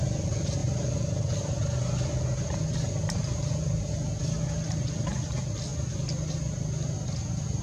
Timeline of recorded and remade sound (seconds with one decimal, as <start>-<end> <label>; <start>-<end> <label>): 0.0-7.6 recorded